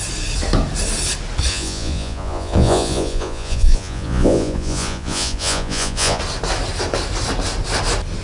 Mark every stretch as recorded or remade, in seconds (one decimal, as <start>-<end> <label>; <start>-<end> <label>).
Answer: 0.0-1.5 recorded; 1.5-6.2 remade; 6.2-8.2 recorded